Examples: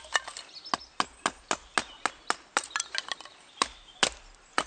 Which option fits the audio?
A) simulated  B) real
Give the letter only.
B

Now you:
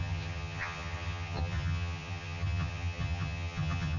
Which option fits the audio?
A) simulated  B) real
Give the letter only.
A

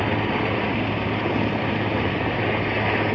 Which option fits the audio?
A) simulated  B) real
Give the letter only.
B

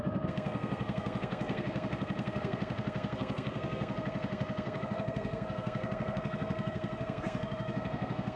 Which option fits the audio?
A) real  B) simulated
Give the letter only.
B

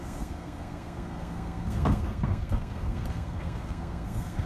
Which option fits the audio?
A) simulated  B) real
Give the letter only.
A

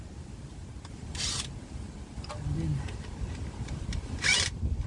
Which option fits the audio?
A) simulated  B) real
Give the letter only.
B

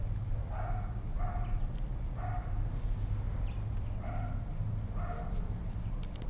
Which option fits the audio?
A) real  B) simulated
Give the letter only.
A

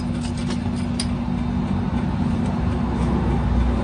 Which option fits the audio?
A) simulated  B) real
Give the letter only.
B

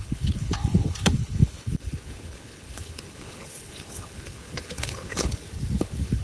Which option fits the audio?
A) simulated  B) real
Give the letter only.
A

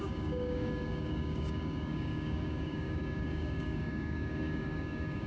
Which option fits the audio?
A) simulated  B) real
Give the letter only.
A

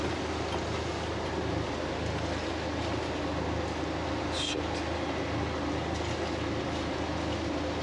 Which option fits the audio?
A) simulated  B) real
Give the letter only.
B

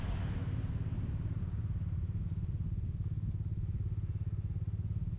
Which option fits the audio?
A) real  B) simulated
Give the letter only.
A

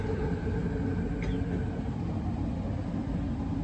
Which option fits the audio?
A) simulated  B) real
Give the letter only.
B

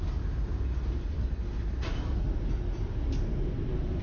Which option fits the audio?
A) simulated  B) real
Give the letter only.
B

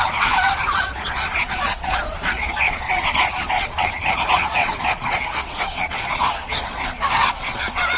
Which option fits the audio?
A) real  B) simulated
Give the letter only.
B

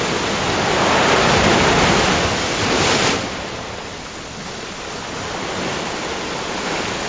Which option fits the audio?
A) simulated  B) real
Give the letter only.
B